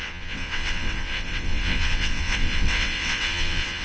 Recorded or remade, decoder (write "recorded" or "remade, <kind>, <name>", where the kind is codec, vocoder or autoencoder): remade, vocoder, WaveNeXt